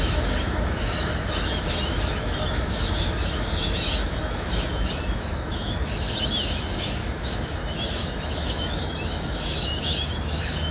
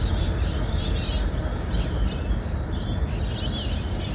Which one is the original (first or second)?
second